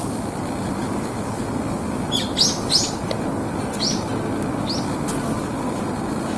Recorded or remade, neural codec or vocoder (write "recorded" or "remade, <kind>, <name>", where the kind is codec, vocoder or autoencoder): recorded